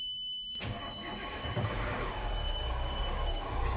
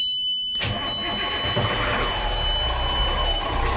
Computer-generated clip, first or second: first